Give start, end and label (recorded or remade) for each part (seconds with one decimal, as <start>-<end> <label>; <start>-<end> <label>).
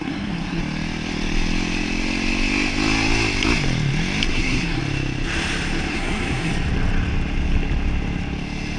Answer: 0.0-0.6 remade; 0.6-4.3 recorded; 4.3-4.8 remade; 4.8-5.9 recorded; 5.9-6.5 remade; 6.5-8.8 recorded